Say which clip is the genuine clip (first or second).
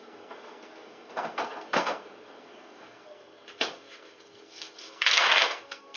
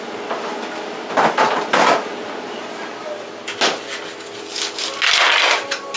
second